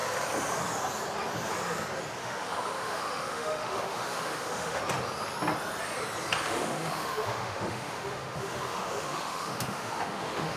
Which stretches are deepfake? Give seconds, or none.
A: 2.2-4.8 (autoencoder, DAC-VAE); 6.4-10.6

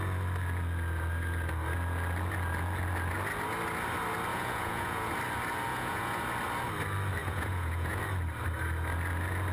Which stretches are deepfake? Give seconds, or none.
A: 4.3-5.1 (vocoder, Vocos); 5.7-6.2; 7.2-8.0

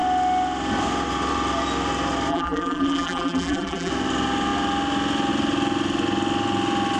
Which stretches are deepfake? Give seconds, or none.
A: 2.3-3.9 (vocoder, BigVGAN v2)

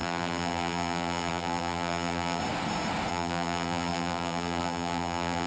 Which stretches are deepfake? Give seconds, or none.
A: 0.0-2.4 (vocoder, BigVGAN v2); 3.1-5.5

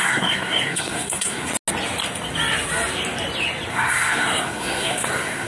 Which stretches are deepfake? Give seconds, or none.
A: 0.0-1.5 (codec, SNAC); 3.7-5.5

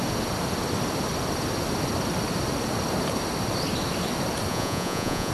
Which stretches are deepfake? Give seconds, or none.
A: 4.5-5.3 (vocoder, Vocos)